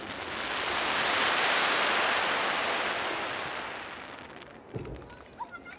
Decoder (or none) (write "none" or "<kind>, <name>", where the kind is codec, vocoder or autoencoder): none